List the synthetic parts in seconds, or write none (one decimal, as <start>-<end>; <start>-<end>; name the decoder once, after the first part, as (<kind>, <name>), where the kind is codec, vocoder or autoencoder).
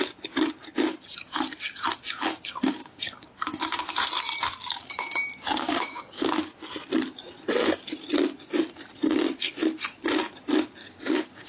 2.8-3.9 (codec, DAC); 4.6-6.3; 10.8-11.5